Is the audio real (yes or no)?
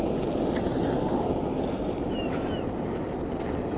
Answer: yes